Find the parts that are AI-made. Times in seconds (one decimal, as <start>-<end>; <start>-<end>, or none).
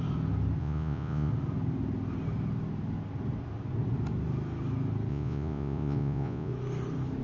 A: 0.6-1.3; 5.1-6.5